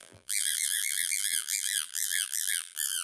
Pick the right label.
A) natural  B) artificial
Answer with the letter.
B